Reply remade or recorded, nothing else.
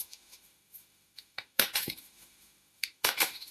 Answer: remade